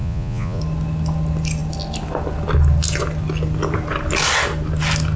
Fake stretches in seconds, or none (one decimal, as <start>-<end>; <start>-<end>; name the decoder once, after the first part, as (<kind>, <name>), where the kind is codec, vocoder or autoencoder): 0.0-0.6 (vocoder, Vocos)